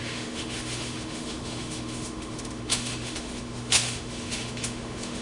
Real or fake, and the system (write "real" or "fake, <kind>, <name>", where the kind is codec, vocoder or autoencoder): fake, autoencoder, DAC-VAE